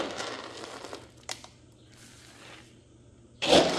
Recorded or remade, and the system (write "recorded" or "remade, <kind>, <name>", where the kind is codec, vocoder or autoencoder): recorded